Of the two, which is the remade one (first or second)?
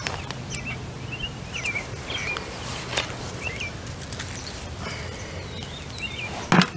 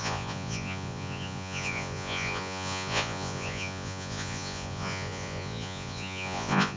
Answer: second